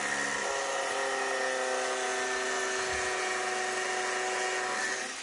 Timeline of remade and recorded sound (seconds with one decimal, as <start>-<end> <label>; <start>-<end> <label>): 0.0-5.2 recorded